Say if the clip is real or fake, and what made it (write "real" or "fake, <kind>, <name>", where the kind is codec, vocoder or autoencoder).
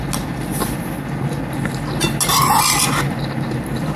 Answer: real